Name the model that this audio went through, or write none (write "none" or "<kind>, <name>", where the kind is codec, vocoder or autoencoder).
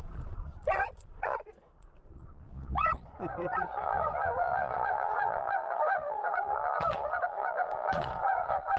vocoder, Vocos